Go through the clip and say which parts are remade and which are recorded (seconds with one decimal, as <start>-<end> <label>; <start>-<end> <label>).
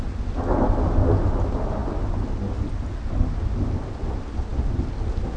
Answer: 0.0-5.4 recorded